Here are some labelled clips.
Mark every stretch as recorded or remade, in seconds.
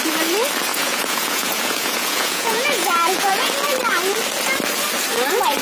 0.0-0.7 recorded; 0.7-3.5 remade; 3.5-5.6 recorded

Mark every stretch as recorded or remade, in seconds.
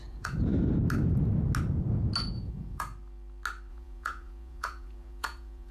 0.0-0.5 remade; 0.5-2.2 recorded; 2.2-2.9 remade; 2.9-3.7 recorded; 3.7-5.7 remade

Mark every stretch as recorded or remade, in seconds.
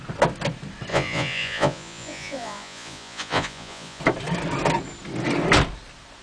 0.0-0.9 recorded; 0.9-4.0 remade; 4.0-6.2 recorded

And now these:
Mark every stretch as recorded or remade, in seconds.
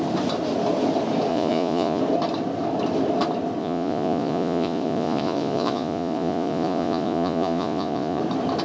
0.0-1.3 recorded; 1.3-2.0 remade; 2.0-3.6 recorded; 3.6-8.2 remade; 8.2-8.6 recorded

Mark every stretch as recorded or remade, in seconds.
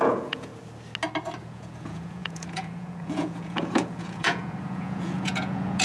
0.0-0.5 remade; 0.5-1.4 recorded; 1.4-5.8 remade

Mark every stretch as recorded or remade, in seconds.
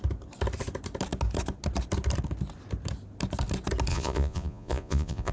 0.0-3.9 recorded; 3.9-5.3 remade